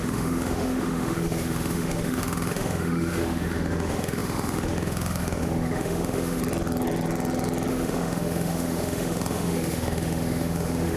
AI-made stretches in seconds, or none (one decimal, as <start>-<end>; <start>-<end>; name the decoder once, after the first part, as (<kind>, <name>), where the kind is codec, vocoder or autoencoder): 0.0-6.4 (autoencoder, DAC-VAE); 7.7-11.0